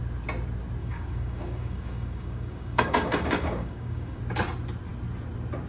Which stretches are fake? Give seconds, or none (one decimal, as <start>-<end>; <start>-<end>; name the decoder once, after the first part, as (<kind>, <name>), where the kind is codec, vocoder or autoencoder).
0.8-4.2 (codec, DAC)